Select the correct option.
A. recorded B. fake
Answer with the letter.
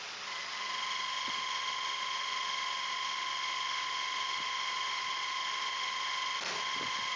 B